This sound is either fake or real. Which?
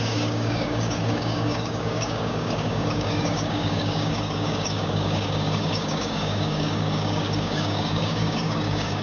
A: fake